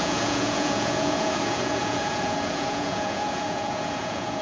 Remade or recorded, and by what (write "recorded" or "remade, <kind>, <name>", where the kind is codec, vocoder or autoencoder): remade, vocoder, Vocos